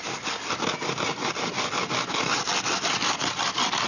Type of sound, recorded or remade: recorded